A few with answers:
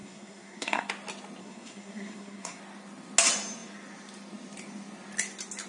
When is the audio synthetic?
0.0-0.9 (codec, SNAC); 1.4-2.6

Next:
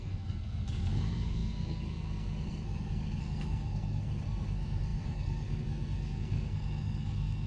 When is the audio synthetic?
0.0-7.5 (codec, SNAC)

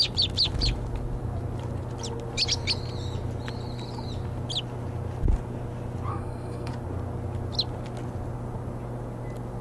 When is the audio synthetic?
6.1-6.7 (codec, SNAC)

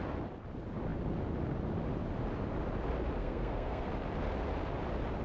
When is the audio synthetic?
3.2-3.9 (codec, SNAC)

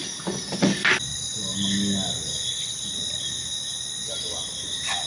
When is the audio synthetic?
none

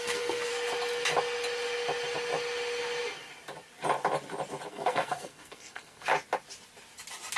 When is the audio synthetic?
0.0-0.5 (codec, SNAC); 4.7-6.1

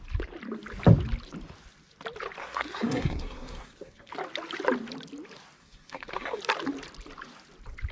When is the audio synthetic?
2.4-4.1 (codec, SNAC); 5.6-6.4